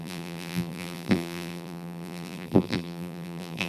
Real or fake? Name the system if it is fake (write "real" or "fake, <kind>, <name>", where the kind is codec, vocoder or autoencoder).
fake, vocoder, BigVGAN v2